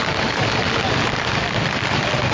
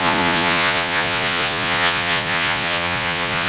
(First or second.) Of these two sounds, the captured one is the first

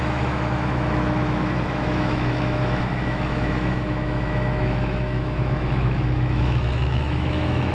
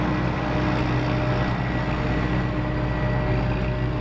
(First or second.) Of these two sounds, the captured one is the second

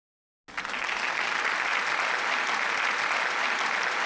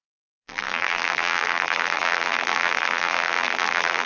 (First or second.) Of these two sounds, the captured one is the first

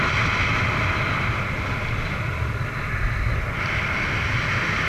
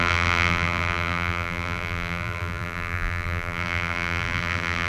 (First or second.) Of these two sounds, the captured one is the first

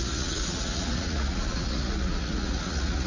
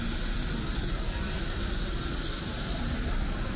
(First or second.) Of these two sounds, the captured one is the second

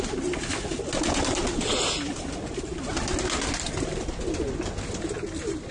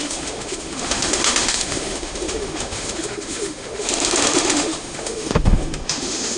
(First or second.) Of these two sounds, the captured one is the first